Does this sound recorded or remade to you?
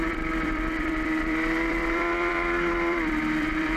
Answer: remade